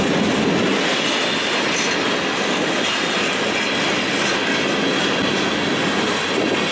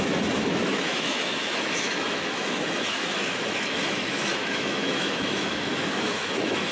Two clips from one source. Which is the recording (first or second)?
first